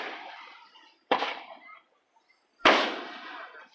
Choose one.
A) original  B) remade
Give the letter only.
B